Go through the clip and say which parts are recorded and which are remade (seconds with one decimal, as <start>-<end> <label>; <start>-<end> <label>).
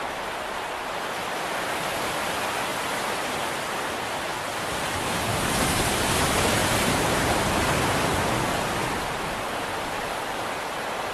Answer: 0.0-2.7 recorded; 2.7-3.5 remade; 3.5-5.3 recorded; 5.3-6.1 remade; 6.1-6.6 recorded; 6.6-7.5 remade; 7.5-11.1 recorded